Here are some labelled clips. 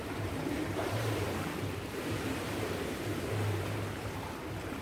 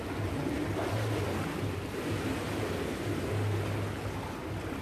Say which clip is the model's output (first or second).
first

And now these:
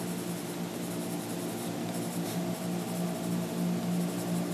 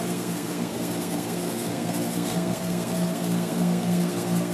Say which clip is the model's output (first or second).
second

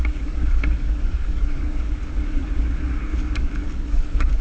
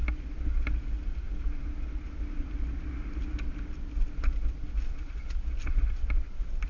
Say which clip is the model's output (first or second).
first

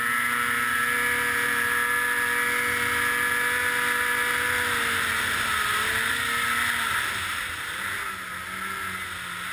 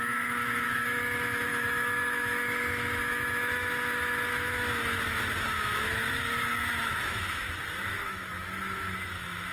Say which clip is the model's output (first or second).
second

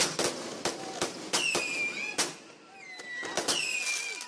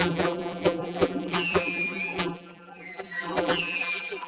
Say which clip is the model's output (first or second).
second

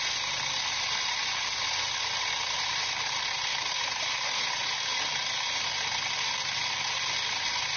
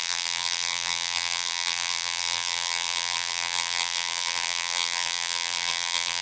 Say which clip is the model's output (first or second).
second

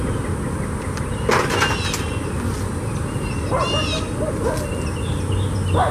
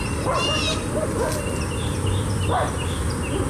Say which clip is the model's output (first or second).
second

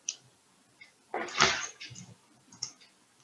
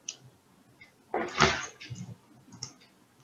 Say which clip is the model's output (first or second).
first